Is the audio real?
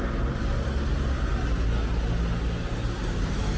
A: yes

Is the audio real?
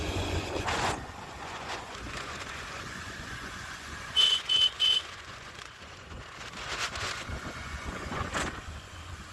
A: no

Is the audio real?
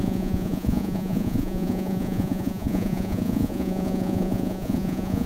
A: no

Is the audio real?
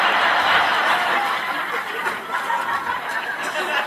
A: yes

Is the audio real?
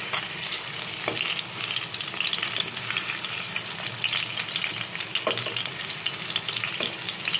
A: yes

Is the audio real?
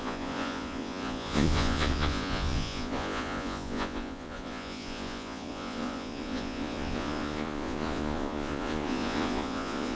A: no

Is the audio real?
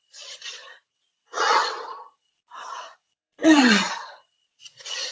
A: no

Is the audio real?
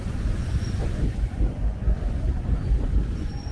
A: no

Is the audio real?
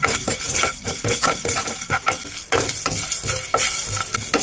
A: yes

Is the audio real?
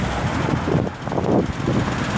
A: yes